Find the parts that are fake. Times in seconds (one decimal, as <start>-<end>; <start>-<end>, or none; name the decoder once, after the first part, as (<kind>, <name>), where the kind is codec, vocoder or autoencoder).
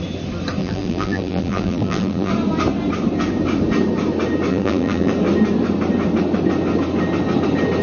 0.6-2.3 (vocoder, BigVGAN v2); 4.5-5.1